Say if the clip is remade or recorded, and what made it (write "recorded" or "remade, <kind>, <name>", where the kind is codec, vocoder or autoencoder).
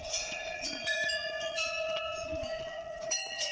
remade, vocoder, Vocos